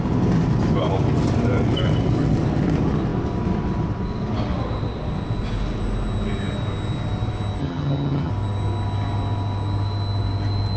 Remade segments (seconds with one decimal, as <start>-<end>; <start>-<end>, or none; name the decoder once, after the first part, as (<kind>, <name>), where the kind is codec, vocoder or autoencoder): 7.6-8.3 (vocoder, HiFi-GAN)